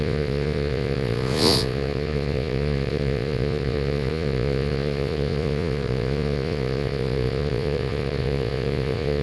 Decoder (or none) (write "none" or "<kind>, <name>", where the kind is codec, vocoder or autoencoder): vocoder, Vocos